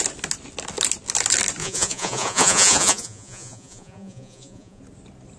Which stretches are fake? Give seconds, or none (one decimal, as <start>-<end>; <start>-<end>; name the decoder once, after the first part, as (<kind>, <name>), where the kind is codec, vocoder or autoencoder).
1.6-4.8 (vocoder, Vocos)